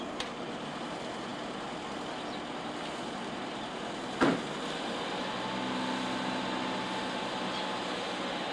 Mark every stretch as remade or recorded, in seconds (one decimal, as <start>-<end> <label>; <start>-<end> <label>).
0.0-8.5 recorded